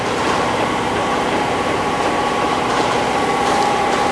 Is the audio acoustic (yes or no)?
no